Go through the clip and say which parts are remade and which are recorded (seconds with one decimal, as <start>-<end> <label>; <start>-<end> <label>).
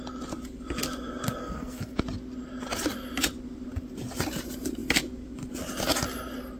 0.0-1.4 recorded; 1.4-2.0 remade; 2.0-6.6 recorded